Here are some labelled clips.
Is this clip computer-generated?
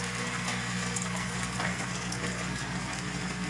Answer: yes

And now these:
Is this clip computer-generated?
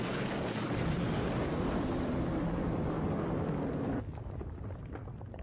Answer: no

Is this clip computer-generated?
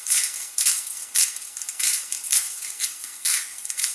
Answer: yes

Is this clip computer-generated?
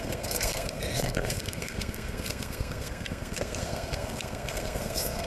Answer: yes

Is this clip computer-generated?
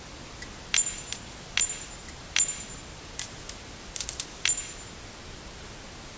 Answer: no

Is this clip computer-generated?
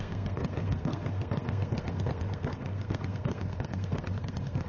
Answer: yes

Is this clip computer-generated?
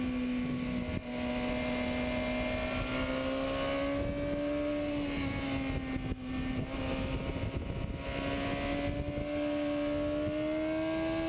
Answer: no